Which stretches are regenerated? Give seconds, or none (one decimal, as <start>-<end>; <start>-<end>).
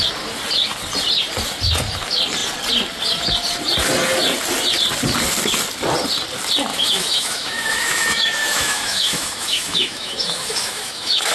6.7-11.3